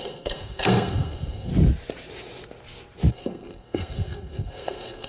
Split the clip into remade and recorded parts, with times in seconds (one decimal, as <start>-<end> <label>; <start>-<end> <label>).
0.0-1.5 remade; 1.5-3.1 recorded; 3.1-5.1 remade